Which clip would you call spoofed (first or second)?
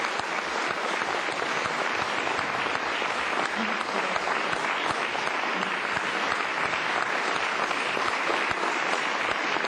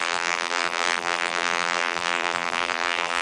second